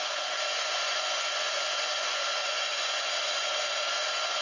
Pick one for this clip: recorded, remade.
remade